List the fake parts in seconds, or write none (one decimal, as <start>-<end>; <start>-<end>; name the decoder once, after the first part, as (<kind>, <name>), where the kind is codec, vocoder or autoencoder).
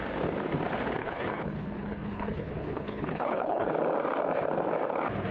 1.0-3.7 (codec, HILCodec)